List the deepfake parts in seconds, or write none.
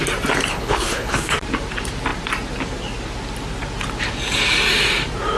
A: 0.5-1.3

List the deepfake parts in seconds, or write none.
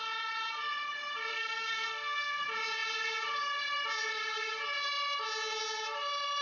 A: 1.3-2.4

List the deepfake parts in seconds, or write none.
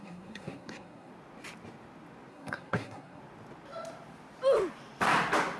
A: 0.0-1.1; 2.3-3.2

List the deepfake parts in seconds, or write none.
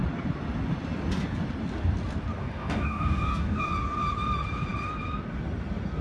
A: 2.4-3.7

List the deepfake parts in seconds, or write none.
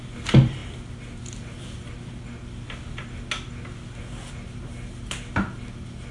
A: none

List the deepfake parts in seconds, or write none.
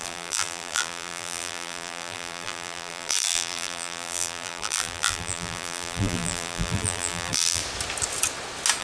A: 0.0-7.6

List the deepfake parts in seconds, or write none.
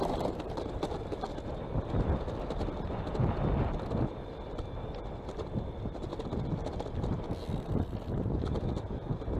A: none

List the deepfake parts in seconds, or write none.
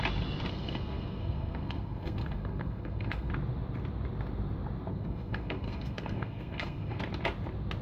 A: 0.5-3.3; 4.9-7.0